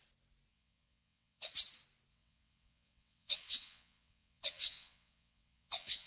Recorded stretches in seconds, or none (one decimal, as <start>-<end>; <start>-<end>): 0.0-0.5; 1.5-2.1